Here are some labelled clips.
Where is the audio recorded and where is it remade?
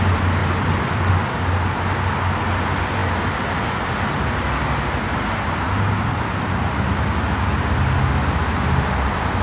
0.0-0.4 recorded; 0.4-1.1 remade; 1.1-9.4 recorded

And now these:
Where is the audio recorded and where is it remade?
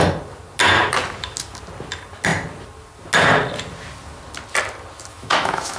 0.0-5.1 recorded; 5.1-5.8 remade